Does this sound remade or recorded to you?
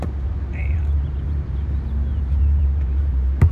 remade